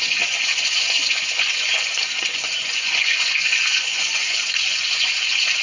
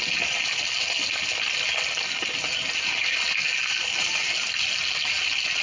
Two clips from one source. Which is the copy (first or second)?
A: first